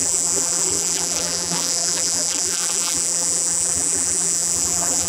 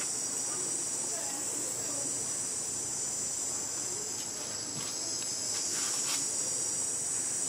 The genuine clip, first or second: second